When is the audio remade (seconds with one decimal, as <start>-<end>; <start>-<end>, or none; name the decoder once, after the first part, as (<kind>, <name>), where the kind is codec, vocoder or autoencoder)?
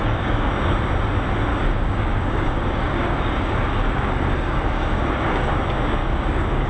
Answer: 0.0-0.5 (codec, DAC); 1.5-5.5; 6.0-6.7